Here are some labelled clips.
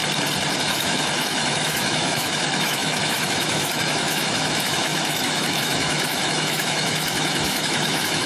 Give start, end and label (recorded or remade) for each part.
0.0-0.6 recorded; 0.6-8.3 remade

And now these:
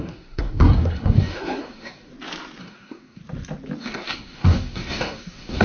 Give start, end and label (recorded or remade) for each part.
0.0-2.1 remade; 2.1-2.6 recorded; 2.6-3.2 remade; 3.2-3.8 recorded; 3.8-5.6 remade

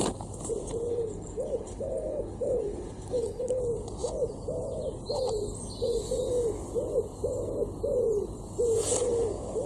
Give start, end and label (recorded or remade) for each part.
0.0-0.9 recorded; 0.9-3.6 remade; 3.6-9.7 recorded

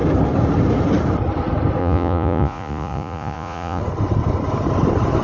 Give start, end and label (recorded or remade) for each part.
0.0-1.8 recorded; 1.8-3.8 remade; 3.8-5.2 recorded

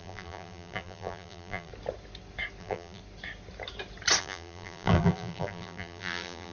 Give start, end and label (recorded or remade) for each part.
0.0-1.7 remade; 1.7-2.6 recorded; 2.6-3.0 remade; 3.0-4.2 recorded; 4.2-6.5 remade

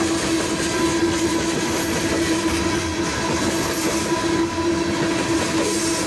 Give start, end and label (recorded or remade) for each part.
0.0-6.1 recorded

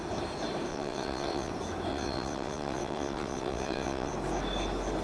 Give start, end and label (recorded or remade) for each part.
0.0-0.7 recorded; 0.7-1.5 remade; 1.5-1.9 recorded; 1.9-4.1 remade; 4.1-5.0 recorded